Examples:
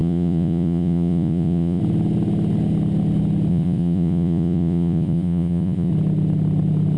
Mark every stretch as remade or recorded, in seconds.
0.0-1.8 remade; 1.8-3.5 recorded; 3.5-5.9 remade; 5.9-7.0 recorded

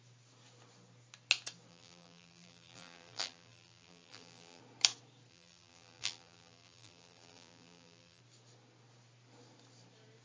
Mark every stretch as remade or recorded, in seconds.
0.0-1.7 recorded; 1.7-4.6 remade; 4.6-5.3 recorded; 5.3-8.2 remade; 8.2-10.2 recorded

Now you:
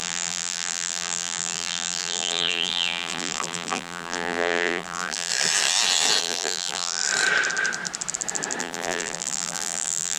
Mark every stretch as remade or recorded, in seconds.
0.0-5.3 remade; 5.3-6.2 recorded; 6.2-7.0 remade; 7.0-8.6 recorded; 8.6-10.2 remade

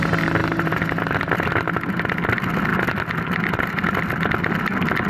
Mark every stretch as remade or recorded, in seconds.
0.0-0.4 recorded; 0.4-1.0 remade; 1.0-5.1 recorded

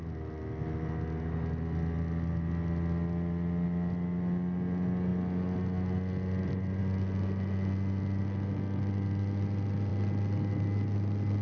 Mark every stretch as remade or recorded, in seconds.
0.0-11.4 recorded

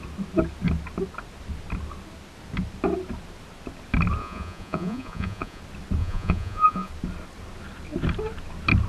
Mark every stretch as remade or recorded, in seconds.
0.0-4.2 recorded; 4.2-5.6 remade; 5.6-6.0 recorded; 6.0-6.9 remade; 6.9-8.9 recorded

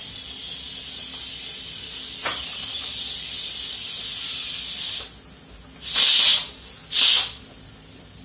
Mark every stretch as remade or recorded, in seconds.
0.0-8.2 recorded

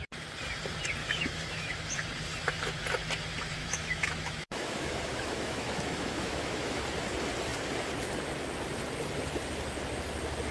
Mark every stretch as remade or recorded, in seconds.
0.0-1.0 recorded; 1.0-1.7 remade; 1.7-3.6 recorded; 3.6-6.8 remade; 6.8-10.5 recorded